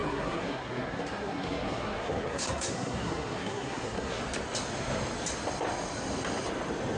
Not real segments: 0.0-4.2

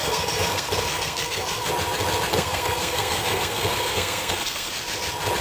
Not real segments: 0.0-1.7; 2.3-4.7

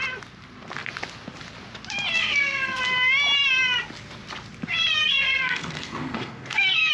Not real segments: 2.2-2.8; 5.0-6.9